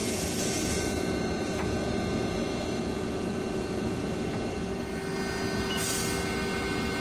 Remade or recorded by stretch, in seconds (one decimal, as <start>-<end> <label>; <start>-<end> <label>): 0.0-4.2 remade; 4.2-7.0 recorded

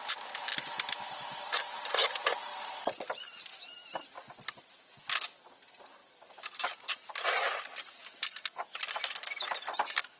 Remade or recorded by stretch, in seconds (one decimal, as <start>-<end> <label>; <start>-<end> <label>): 0.0-10.2 recorded

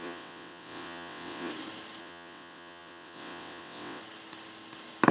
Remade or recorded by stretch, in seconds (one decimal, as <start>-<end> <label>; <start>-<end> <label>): 0.0-1.5 remade; 1.5-2.0 recorded; 2.0-4.0 remade; 4.0-5.1 recorded

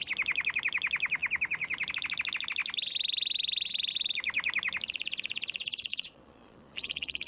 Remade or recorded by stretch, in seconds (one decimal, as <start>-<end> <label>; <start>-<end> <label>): 0.0-5.9 recorded; 5.9-7.3 remade

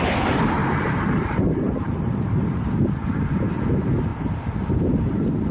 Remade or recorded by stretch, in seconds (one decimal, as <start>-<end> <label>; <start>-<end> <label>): 0.0-0.6 recorded; 0.6-2.9 remade; 2.9-5.5 recorded

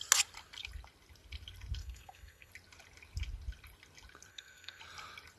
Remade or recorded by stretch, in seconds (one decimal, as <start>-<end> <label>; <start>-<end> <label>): 0.0-1.8 recorded; 1.8-2.5 remade; 2.5-4.3 recorded; 4.3-4.8 remade; 4.8-5.4 recorded

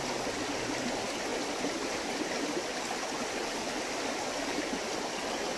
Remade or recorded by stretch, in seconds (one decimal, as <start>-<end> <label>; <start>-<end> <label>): 0.0-5.6 recorded

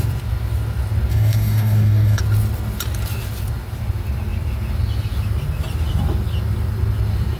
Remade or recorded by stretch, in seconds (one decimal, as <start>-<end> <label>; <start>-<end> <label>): 0.0-1.1 recorded; 1.1-2.2 remade; 2.2-7.4 recorded